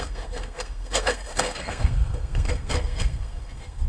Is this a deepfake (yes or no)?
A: yes